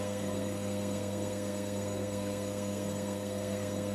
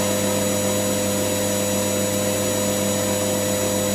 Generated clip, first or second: first